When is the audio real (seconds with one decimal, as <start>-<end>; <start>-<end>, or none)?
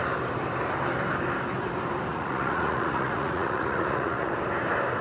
0.0-2.1; 4.3-5.0